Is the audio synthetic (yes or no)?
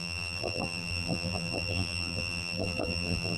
yes